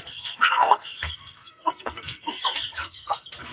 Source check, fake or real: fake